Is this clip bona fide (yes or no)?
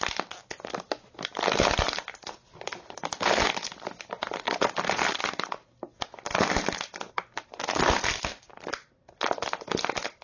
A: yes